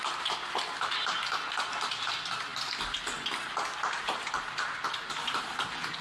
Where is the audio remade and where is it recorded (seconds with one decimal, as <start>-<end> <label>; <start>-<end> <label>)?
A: 0.0-6.0 recorded